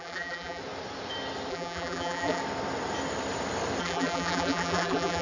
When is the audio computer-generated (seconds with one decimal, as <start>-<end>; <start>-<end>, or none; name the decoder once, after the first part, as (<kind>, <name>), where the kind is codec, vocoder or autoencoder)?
0.0-0.6 (vocoder, BigVGAN v2); 1.5-2.4; 3.8-5.2